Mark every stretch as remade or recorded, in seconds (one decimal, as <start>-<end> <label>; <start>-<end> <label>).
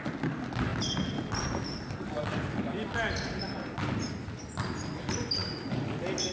0.0-6.3 recorded